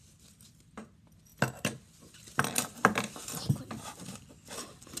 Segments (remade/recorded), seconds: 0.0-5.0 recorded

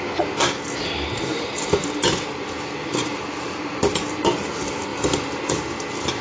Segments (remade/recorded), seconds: 0.0-1.3 recorded; 1.3-3.9 remade; 3.9-6.2 recorded

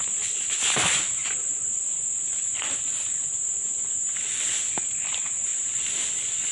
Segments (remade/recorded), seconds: 0.0-1.2 recorded; 1.2-5.1 remade; 5.1-5.5 recorded; 5.5-6.5 remade

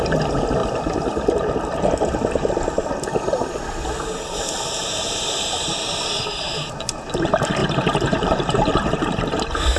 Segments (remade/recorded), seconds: 0.0-7.6 recorded; 7.6-9.4 remade; 9.4-9.8 recorded